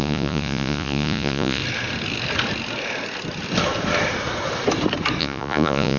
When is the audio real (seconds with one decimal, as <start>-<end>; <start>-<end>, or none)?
1.6-5.2